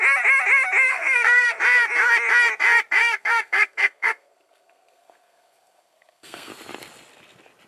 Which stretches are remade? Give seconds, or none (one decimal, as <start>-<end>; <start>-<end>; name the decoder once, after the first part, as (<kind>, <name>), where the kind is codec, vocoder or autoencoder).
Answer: 0.9-1.6 (codec, SNAC); 3.0-6.5